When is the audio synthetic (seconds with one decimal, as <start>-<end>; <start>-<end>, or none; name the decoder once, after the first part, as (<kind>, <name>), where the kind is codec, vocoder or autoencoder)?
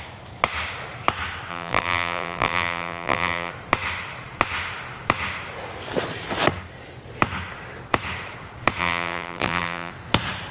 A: 1.5-3.5 (vocoder, BigVGAN v2); 8.8-9.9